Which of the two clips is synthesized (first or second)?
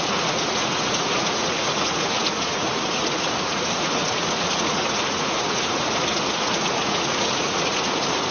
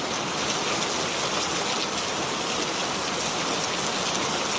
first